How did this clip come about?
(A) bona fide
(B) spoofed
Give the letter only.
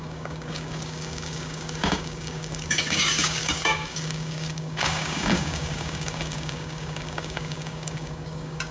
B